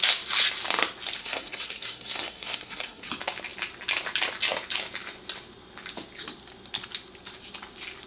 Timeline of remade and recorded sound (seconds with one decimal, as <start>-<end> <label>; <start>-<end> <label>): 0.0-1.2 recorded; 1.2-3.1 remade; 3.1-8.1 recorded